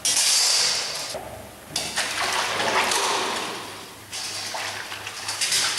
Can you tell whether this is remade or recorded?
recorded